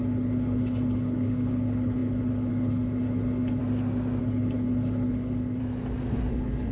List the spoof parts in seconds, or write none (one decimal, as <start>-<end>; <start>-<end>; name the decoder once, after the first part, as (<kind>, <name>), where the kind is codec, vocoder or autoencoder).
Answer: 0.0-3.6 (codec, HILCodec); 4.2-5.6; 6.3-6.7

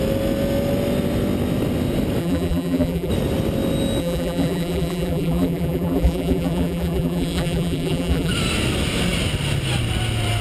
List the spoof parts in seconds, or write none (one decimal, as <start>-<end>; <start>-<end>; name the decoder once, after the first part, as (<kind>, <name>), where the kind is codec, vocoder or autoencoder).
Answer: 2.2-3.1 (vocoder, BigVGAN v2); 4.0-8.3

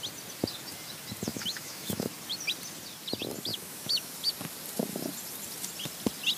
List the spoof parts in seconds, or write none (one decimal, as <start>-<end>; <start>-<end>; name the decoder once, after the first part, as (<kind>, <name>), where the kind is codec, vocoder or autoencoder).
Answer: 1.3-2.1 (autoencoder, DAC-VAE); 3.5-4.3

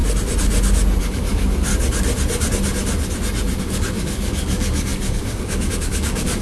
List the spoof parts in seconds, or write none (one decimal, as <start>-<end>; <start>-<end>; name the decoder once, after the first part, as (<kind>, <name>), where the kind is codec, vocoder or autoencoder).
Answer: 1.0-1.7 (codec, DAC); 3.6-6.4

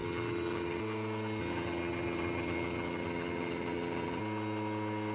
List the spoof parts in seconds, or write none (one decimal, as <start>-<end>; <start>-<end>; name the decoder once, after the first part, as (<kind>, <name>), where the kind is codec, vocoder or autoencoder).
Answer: 0.0-0.8 (vocoder, HiFi-GAN); 1.4-4.2

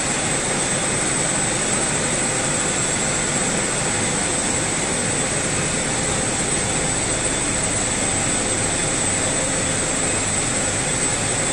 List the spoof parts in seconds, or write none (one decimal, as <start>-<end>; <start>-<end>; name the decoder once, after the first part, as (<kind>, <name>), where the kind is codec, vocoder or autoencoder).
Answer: none

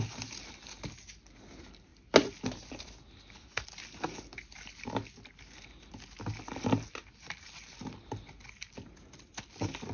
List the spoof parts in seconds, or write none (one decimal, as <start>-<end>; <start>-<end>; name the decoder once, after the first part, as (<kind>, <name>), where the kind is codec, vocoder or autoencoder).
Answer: none